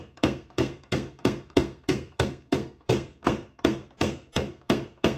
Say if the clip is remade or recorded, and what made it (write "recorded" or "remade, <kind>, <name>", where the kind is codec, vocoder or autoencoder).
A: remade, codec, SNAC